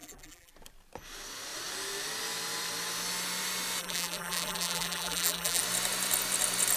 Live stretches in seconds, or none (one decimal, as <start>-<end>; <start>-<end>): 0.5-3.8; 5.6-6.8